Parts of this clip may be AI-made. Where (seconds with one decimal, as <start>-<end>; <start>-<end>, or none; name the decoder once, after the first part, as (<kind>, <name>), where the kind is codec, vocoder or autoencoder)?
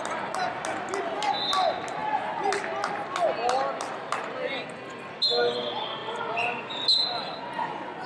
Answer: none